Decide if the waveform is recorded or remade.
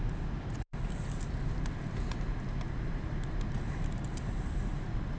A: recorded